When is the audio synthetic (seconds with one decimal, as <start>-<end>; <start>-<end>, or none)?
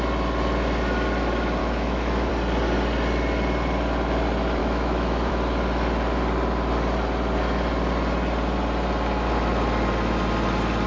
1.6-2.3; 4.6-5.3